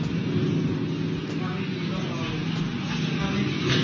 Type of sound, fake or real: real